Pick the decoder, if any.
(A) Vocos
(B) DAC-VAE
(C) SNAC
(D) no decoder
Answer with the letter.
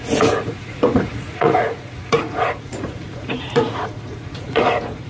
A